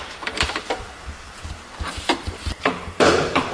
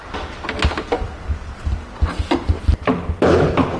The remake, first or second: first